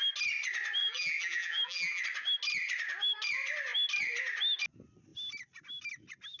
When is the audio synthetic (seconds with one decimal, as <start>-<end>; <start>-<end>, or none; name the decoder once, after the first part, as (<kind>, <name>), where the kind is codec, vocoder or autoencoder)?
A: 0.8-2.0 (vocoder, BigVGAN v2)